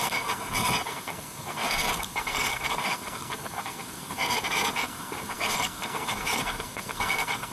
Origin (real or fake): fake